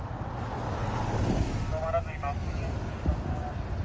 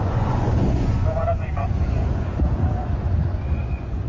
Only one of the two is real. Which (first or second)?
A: first